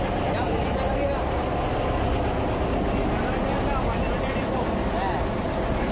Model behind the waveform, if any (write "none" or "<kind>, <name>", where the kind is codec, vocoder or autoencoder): none